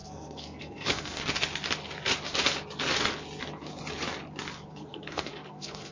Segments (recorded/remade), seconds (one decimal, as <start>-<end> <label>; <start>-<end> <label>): 0.0-1.2 remade; 1.2-4.7 recorded; 4.7-5.9 remade